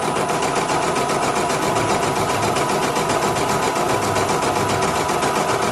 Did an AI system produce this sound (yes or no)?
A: no